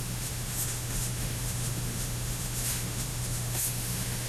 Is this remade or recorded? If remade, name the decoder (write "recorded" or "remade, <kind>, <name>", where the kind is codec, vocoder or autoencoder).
remade, autoencoder, DAC-VAE